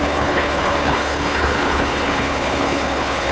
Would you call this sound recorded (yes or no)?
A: no